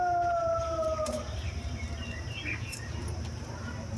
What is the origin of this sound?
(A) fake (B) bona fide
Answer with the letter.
A